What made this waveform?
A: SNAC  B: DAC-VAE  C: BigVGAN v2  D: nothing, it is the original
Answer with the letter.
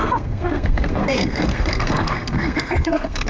A